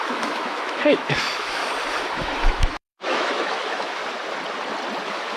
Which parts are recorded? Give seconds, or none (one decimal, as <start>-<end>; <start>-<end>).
1.6-2.1; 4.0-5.0